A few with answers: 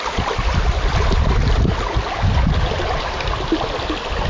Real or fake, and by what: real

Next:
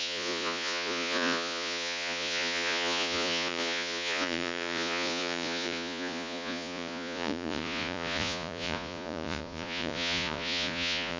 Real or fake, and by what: fake, vocoder, Vocos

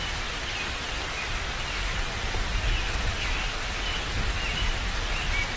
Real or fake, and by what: real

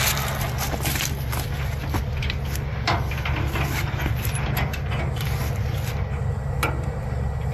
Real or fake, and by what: real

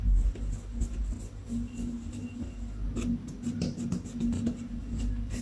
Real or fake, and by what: real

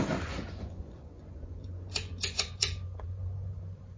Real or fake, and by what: fake, vocoder, Vocos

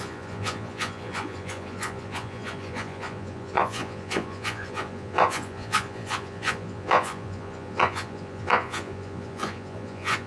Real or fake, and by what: fake, vocoder, Vocos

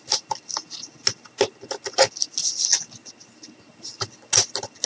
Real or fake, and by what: real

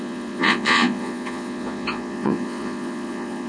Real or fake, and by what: fake, vocoder, Vocos